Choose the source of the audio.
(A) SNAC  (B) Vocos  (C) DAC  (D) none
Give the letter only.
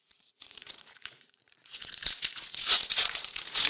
B